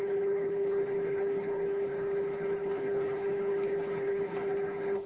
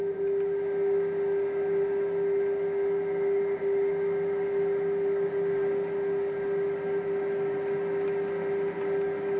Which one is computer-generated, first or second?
first